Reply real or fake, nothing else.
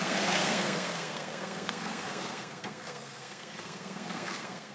fake